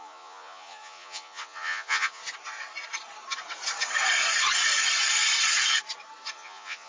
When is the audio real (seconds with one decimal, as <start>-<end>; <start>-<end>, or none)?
2.2-6.3